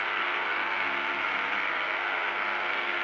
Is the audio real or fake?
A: fake